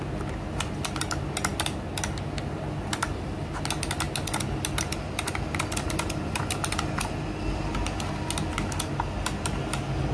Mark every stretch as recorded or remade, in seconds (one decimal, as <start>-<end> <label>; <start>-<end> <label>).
0.0-10.1 recorded